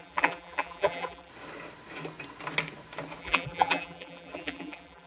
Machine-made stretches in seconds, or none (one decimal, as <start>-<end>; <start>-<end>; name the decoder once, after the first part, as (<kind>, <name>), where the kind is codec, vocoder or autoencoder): 0.0-1.3 (vocoder, BigVGAN v2); 3.2-5.1